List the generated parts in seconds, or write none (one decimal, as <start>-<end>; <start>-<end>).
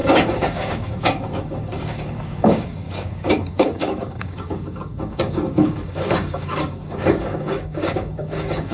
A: 0.0-8.7